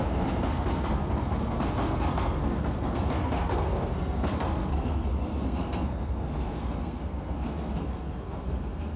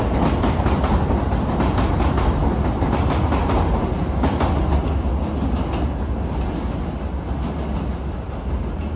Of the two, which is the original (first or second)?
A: second